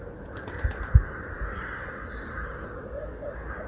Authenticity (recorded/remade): recorded